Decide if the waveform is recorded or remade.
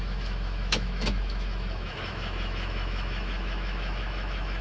remade